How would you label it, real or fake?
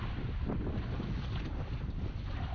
real